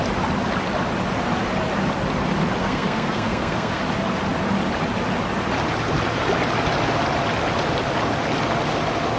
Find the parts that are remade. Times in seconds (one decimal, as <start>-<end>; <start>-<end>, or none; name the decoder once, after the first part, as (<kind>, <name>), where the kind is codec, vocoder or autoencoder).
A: 2.6-3.8 (codec, SNAC)